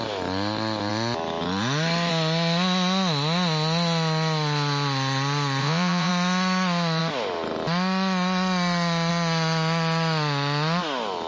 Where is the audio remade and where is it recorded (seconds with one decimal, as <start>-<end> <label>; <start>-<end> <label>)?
0.0-5.6 recorded; 5.6-6.1 remade; 6.1-11.3 recorded